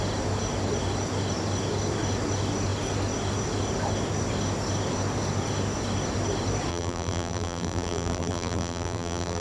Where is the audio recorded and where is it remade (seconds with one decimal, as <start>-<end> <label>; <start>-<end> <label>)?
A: 0.0-6.7 recorded; 6.7-9.4 remade